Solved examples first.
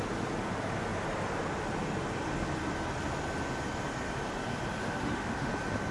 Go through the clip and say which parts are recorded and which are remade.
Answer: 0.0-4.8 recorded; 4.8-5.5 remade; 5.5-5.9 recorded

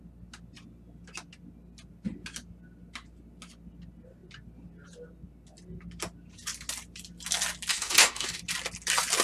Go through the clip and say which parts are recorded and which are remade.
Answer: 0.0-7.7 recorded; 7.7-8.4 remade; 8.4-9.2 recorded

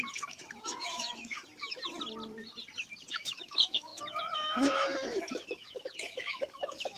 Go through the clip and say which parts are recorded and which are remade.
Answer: 0.0-1.8 remade; 1.8-3.1 recorded; 3.1-7.0 remade

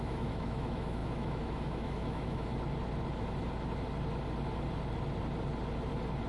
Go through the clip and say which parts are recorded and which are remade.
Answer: 0.0-2.5 remade; 2.5-6.3 recorded